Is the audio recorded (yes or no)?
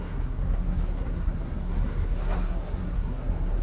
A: no